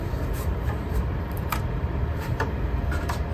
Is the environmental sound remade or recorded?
remade